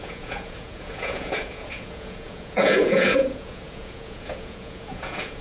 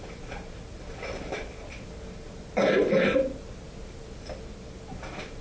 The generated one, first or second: first